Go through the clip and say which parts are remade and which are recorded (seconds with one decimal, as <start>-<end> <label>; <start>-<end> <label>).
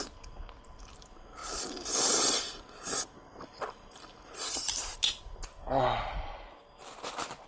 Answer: 0.0-7.5 recorded